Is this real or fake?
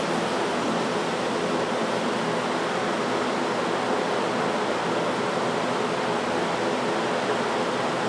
real